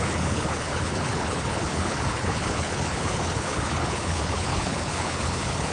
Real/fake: fake